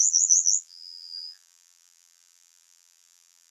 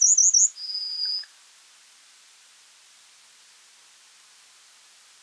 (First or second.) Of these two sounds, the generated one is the first